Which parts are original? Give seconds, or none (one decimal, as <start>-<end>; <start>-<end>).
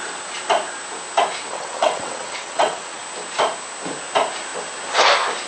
0.0-1.5; 3.0-5.5